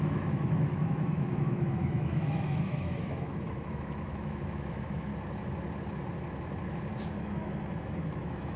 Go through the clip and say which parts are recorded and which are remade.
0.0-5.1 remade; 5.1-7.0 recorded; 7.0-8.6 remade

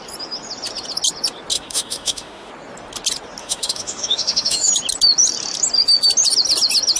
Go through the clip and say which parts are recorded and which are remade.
0.0-1.5 recorded; 1.5-2.5 remade; 2.5-3.4 recorded; 3.4-4.7 remade; 4.7-7.0 recorded

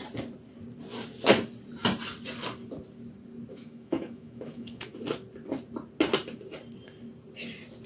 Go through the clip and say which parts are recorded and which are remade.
0.0-3.5 recorded; 3.5-4.9 remade; 4.9-7.9 recorded

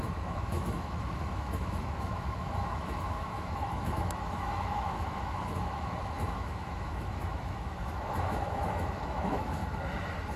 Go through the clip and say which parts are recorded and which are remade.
0.0-9.6 remade; 9.6-10.4 recorded